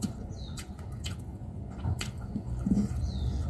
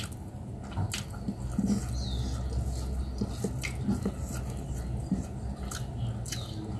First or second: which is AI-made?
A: first